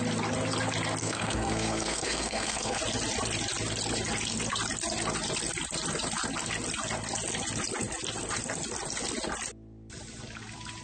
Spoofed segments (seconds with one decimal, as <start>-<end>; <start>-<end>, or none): 1.0-2.8